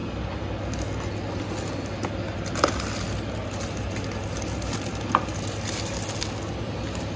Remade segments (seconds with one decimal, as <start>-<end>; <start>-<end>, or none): none